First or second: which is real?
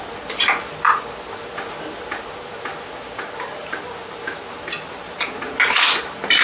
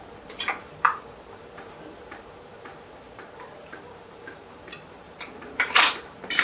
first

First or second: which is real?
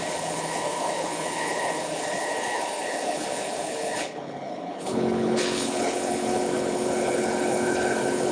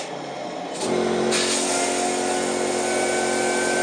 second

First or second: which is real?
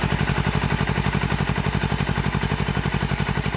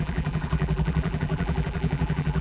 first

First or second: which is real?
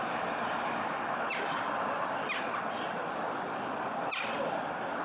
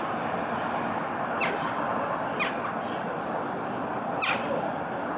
second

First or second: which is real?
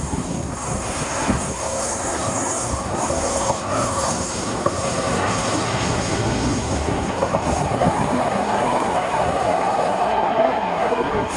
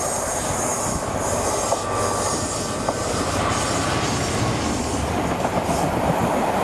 second